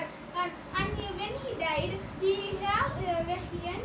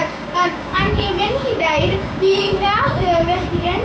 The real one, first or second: first